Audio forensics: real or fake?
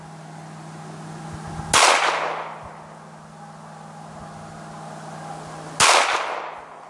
real